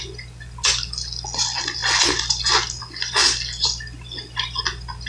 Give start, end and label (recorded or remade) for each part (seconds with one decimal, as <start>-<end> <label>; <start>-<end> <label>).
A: 0.0-5.1 recorded